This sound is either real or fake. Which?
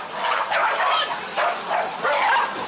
real